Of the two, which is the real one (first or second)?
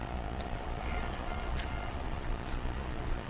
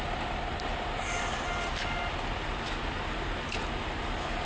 second